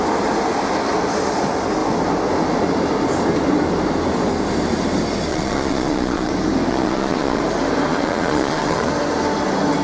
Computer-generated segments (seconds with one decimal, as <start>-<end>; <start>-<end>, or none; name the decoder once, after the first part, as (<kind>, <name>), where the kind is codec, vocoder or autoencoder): 5.3-6.3 (vocoder, Vocos); 6.7-7.4; 7.9-8.9